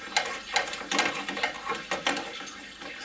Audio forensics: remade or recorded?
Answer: recorded